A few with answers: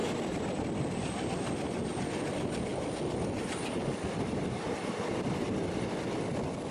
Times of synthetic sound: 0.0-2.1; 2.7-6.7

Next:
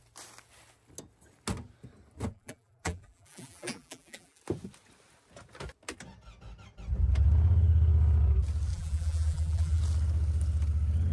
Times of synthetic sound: 2.3-4.4; 8.7-9.8

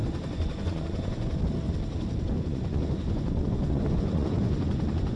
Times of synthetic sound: 0.0-1.4; 2.5-5.2

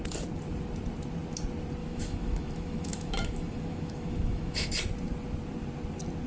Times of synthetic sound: 1.8-4.7

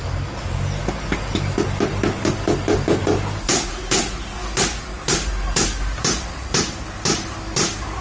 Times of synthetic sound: none

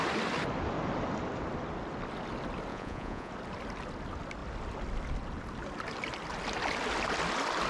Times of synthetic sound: 2.7-3.3

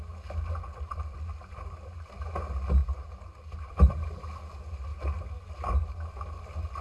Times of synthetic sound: none